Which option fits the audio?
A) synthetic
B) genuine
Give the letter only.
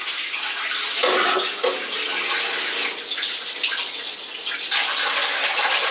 B